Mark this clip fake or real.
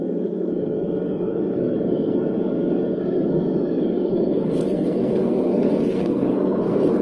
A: fake